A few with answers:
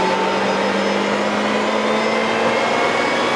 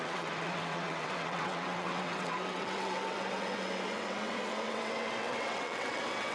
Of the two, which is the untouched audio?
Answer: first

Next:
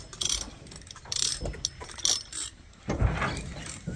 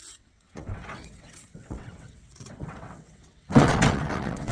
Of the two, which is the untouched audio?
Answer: first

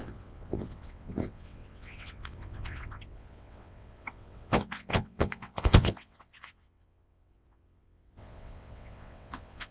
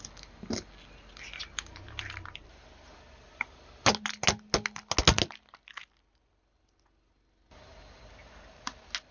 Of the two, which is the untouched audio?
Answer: second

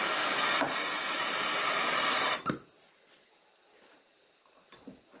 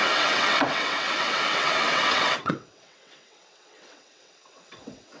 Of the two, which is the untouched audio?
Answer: first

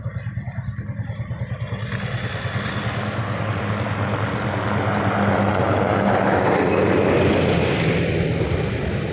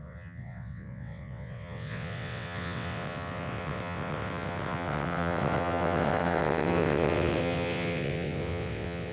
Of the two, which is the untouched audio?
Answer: first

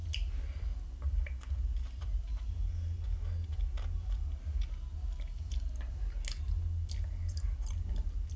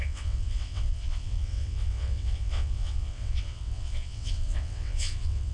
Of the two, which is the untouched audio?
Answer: first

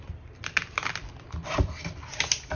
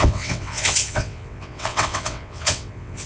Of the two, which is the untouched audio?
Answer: first